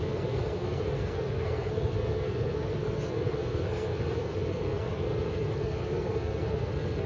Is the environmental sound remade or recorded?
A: remade